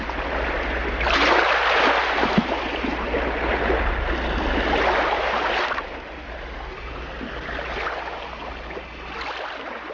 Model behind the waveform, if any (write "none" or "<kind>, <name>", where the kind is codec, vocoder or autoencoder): none